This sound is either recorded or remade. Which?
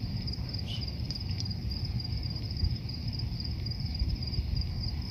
remade